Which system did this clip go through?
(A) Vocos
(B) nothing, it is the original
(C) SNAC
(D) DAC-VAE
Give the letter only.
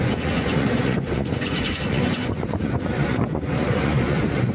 A